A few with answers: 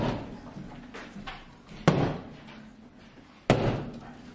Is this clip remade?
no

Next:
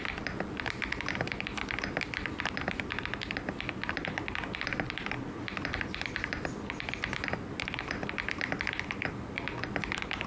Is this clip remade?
no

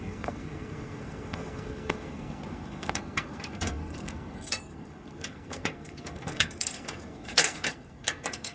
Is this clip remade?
yes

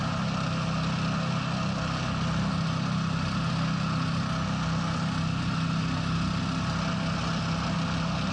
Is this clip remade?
no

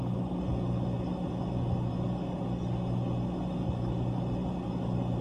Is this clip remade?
no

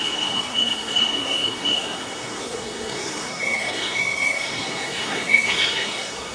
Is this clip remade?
yes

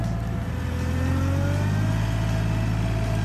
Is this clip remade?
no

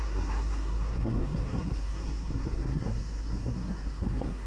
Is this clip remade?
yes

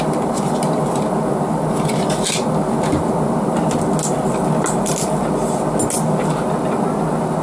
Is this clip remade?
no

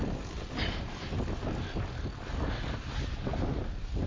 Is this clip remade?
no